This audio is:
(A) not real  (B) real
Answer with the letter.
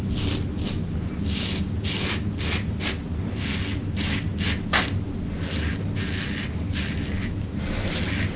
B